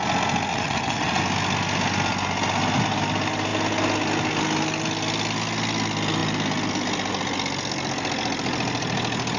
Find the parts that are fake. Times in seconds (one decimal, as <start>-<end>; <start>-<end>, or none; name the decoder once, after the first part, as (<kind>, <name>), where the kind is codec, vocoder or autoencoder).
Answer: 0.5-1.2 (vocoder, WaveNeXt)